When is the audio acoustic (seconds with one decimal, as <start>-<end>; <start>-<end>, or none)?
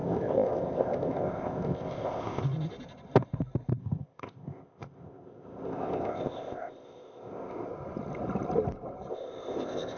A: 2.4-3.8; 7.7-9.1